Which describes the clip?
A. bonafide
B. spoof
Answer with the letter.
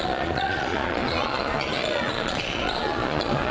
B